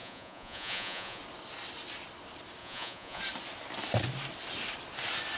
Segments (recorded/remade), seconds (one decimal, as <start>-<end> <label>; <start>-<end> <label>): 0.0-1.2 remade; 1.2-2.6 recorded; 2.6-3.2 remade; 3.2-5.4 recorded

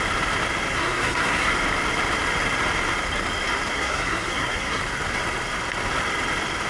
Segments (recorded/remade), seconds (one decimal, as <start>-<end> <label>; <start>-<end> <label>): 0.0-0.7 recorded; 0.7-1.5 remade; 1.5-3.7 recorded; 3.7-4.8 remade; 4.8-6.7 recorded

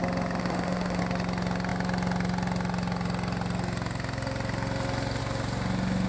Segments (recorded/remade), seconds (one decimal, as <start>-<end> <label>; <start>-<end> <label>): 0.0-0.4 recorded; 0.4-1.0 remade; 1.0-6.1 recorded

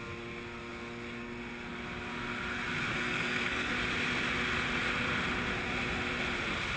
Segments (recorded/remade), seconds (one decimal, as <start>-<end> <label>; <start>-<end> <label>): 0.0-2.9 recorded; 2.9-3.7 remade; 3.7-6.8 recorded

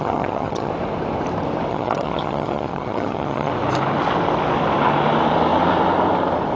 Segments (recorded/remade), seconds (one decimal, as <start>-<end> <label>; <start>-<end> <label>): 0.0-0.7 remade; 0.7-1.7 recorded; 1.7-3.5 remade; 3.5-6.6 recorded

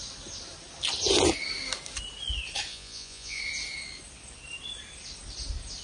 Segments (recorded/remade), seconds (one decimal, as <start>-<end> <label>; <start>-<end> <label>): 0.0-2.7 recorded; 2.7-3.4 remade; 3.4-5.8 recorded

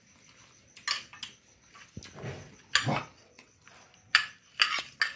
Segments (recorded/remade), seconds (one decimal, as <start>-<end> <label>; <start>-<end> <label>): 0.0-3.0 recorded; 3.0-3.6 remade; 3.6-5.2 recorded

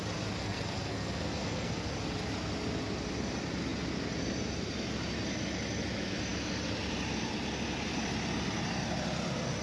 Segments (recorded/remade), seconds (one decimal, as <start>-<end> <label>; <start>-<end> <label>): 0.0-0.4 recorded; 0.4-1.9 remade; 1.9-9.6 recorded